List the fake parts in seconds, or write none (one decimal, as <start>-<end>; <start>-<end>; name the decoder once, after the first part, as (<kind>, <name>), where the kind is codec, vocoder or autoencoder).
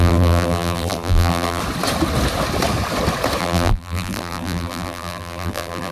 0.0-1.6 (vocoder, BigVGAN v2); 3.4-5.9